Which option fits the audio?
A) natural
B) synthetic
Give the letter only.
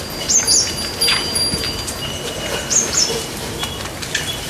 A